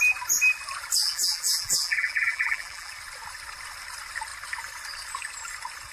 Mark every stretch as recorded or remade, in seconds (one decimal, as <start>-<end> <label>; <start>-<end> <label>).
0.0-1.0 recorded; 1.0-2.9 remade; 2.9-5.9 recorded